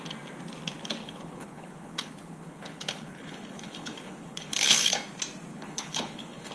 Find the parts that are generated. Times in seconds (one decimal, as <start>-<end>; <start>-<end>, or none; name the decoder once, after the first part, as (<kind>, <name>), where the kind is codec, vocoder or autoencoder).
1.0-4.9 (codec, HILCodec); 5.5-6.5